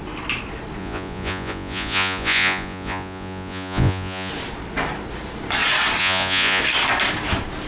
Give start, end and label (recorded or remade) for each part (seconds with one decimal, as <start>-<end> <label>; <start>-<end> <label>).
0.0-0.8 recorded; 0.8-4.3 remade; 4.3-6.0 recorded; 6.0-6.6 remade; 6.6-7.7 recorded